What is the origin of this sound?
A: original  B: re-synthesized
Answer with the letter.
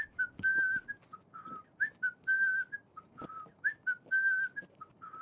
A